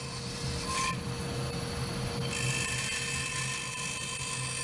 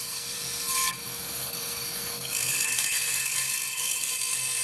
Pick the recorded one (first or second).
first